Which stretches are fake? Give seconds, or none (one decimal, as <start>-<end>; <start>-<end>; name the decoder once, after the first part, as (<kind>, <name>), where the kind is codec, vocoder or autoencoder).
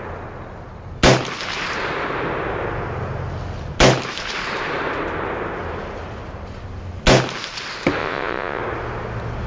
8.0-8.6 (vocoder, Vocos)